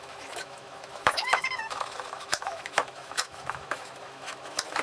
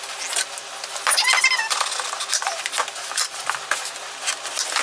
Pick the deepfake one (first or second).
first